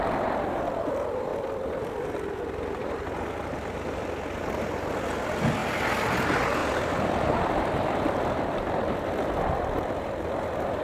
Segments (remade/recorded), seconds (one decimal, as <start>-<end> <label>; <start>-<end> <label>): 0.0-1.3 recorded; 1.3-4.4 remade; 4.4-6.6 recorded; 6.6-10.8 remade